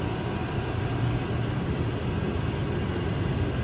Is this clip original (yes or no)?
yes